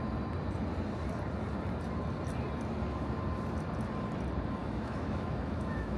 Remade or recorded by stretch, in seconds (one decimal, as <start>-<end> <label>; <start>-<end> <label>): 0.0-4.6 recorded; 4.6-6.0 remade